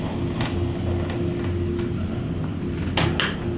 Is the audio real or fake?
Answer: real